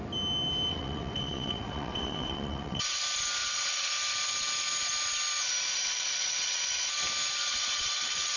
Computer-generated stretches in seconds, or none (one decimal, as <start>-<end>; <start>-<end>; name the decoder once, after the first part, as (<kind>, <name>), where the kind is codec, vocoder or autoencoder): 0.7-3.0 (vocoder, WaveNeXt); 3.4-3.9; 5.7-6.9; 7.5-8.4